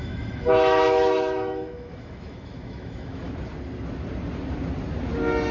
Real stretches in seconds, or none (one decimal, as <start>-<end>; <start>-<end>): 3.3-5.5